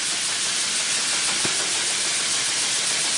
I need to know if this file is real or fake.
real